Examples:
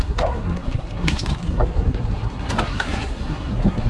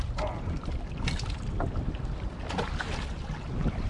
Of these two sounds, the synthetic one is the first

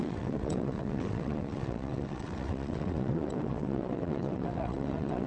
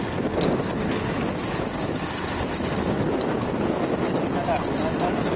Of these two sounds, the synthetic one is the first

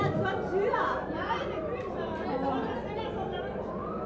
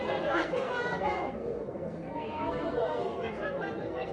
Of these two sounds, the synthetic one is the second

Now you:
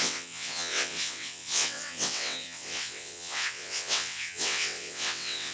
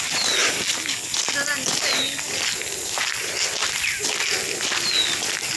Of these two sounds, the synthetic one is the first